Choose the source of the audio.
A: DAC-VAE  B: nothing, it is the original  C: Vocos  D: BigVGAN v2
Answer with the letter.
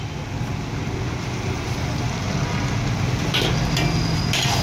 B